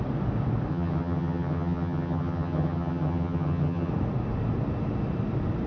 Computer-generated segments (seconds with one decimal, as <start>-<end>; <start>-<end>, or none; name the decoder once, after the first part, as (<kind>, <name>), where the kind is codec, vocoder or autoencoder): 0.7-3.9 (vocoder, HiFi-GAN)